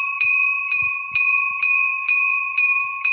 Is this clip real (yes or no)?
no